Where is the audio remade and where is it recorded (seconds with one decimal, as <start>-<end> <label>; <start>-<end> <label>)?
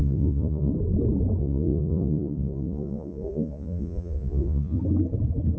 0.0-0.7 remade; 0.7-1.4 recorded; 1.4-4.8 remade; 4.8-5.6 recorded